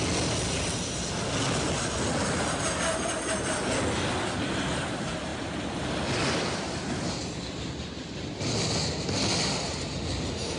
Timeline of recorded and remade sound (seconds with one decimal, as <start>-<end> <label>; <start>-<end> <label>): 0.0-10.6 recorded